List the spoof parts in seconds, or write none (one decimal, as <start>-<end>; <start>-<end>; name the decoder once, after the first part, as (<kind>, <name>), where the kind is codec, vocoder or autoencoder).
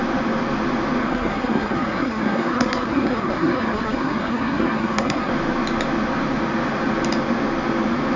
1.0-5.3 (codec, SNAC)